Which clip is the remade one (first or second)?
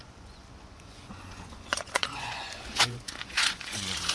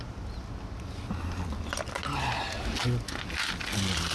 first